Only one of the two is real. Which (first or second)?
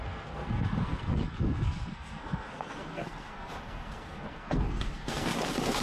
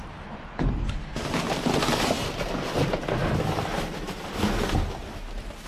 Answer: second